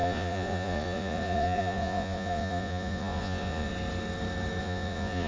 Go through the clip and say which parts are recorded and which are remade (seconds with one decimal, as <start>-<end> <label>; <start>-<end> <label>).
0.0-3.7 remade; 3.7-4.6 recorded; 4.6-5.3 remade